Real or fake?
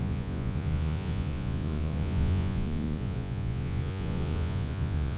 fake